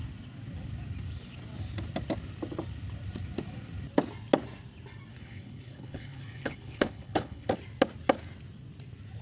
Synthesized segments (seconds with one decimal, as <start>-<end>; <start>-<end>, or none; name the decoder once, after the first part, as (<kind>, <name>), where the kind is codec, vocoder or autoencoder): 5.1-7.5 (codec, HILCodec)